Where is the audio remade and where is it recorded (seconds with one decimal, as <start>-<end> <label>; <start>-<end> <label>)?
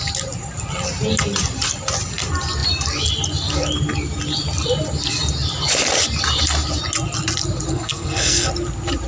0.0-7.7 recorded; 7.7-8.5 remade; 8.5-9.1 recorded